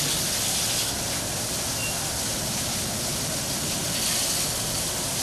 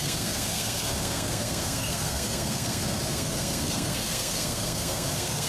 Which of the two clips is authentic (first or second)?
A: first